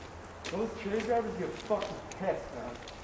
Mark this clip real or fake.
real